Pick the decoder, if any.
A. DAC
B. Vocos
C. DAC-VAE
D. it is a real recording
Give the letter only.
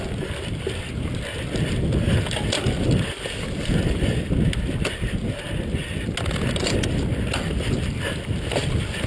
D